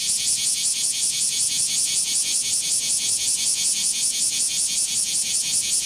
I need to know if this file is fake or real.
fake